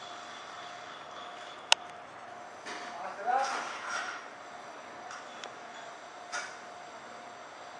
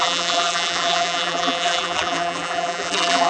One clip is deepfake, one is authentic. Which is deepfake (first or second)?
second